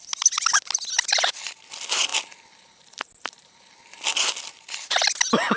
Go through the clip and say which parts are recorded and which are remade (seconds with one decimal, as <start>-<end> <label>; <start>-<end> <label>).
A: 0.0-5.6 recorded